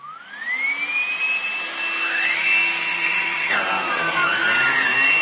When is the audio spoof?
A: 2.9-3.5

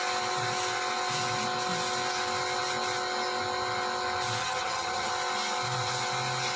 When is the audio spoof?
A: 4.4-5.1

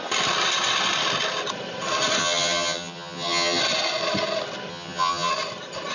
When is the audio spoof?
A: 2.2-3.6; 4.7-5.3